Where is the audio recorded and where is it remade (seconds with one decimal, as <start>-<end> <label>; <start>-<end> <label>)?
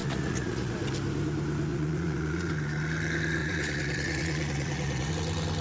0.0-0.7 remade; 0.7-1.7 recorded; 1.7-2.5 remade; 2.5-3.4 recorded; 3.4-5.1 remade; 5.1-5.6 recorded